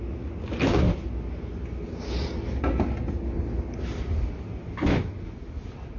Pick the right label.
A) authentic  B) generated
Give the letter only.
A